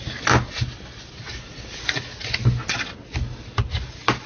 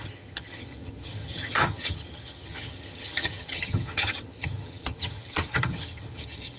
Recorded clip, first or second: first